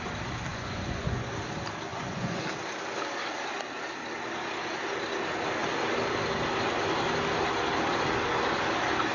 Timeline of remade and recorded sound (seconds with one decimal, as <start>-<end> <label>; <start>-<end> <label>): 0.0-0.5 recorded; 0.5-1.3 remade; 1.3-1.9 recorded; 1.9-2.4 remade; 2.4-9.1 recorded